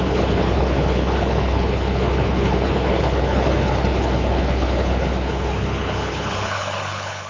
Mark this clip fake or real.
fake